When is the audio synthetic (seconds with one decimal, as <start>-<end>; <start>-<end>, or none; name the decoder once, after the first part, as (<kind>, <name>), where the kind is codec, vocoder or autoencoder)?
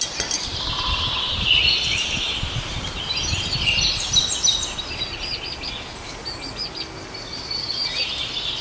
0.5-2.9 (vocoder, BigVGAN v2); 7.8-8.6